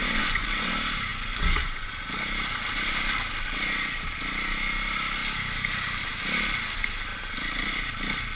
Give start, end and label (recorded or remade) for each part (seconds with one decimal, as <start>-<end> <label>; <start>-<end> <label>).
0.0-0.7 remade; 0.7-1.1 recorded; 1.1-1.9 remade; 1.9-8.4 recorded